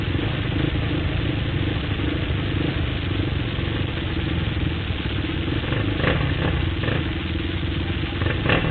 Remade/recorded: recorded